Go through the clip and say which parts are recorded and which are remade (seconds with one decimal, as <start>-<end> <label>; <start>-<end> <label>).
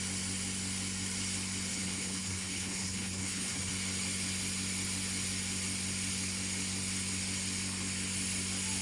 0.0-1.7 recorded; 1.7-3.7 remade; 3.7-8.8 recorded